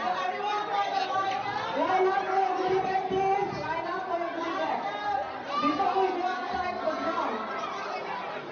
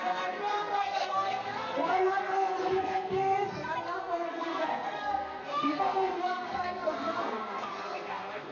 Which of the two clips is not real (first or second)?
second